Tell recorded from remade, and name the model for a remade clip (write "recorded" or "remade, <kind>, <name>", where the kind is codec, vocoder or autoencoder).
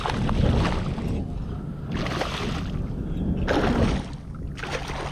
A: recorded